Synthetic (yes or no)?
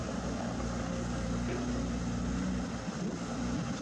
no